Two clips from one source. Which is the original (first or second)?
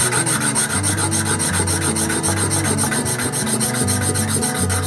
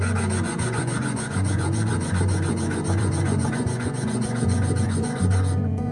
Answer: first